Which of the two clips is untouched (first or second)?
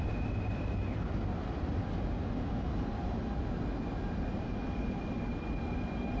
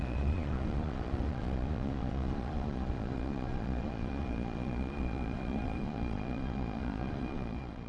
first